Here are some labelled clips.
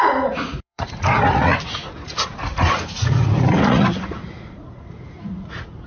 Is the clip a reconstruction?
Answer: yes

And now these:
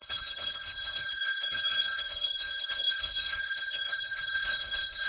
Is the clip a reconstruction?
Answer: yes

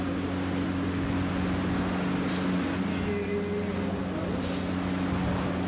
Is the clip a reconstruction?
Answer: no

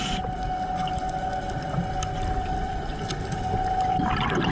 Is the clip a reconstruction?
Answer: no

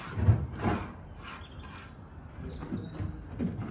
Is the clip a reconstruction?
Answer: no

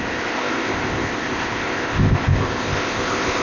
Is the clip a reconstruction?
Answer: yes